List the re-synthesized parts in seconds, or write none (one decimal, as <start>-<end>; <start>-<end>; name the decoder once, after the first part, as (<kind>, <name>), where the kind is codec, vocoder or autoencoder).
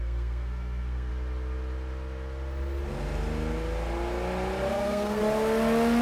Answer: 0.0-1.1 (codec, SNAC); 4.7-5.2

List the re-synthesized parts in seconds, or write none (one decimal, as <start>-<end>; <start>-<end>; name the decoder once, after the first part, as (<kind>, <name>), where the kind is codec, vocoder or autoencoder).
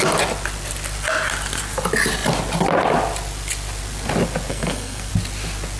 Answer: 4.5-5.1 (codec, SNAC)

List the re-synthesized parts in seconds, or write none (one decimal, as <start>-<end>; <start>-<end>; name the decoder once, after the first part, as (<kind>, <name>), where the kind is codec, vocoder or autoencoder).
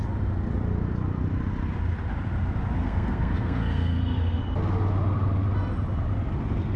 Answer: 2.8-4.4 (codec, SNAC)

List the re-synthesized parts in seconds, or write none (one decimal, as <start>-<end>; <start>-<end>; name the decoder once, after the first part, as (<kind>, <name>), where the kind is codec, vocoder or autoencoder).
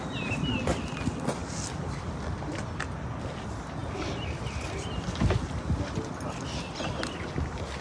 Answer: none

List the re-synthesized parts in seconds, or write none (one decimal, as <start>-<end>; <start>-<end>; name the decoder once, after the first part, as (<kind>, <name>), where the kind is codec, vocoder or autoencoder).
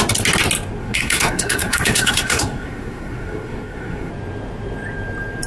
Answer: 0.8-4.1 (codec, SNAC)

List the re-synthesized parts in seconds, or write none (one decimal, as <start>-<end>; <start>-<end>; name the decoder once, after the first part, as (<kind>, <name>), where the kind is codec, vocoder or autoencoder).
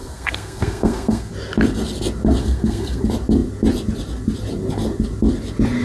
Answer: 0.0-1.3 (codec, SNAC); 2.4-3.0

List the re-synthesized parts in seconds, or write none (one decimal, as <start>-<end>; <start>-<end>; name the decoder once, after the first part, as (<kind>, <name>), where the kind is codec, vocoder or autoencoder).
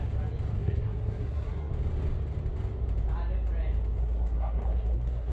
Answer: 0.6-1.7 (codec, SNAC); 4.0-5.3